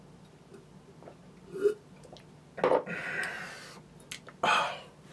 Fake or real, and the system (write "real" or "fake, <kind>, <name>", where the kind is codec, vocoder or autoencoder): real